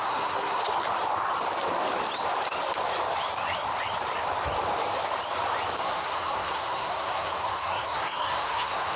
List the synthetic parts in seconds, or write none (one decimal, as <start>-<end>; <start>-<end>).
0.0-0.6; 5.8-9.0